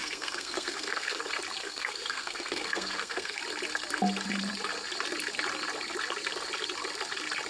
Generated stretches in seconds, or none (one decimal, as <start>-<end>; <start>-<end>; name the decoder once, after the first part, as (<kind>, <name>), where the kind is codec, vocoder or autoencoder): 0.0-1.2 (codec, SNAC); 1.6-3.4